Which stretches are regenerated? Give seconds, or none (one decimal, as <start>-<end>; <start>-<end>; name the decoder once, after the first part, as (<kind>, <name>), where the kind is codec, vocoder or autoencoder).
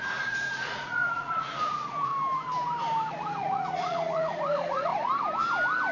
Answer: 0.0-2.1 (vocoder, Vocos); 3.1-4.9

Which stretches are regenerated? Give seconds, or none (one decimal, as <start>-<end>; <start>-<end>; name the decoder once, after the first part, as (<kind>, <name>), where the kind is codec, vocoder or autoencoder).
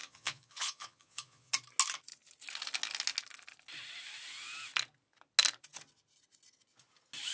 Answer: 0.0-1.5 (vocoder, Vocos)